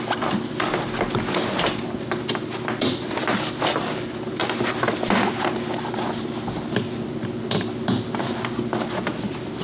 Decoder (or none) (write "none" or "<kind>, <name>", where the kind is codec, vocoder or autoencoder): none